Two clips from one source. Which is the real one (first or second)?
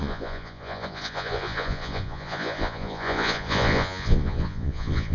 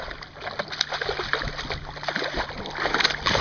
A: second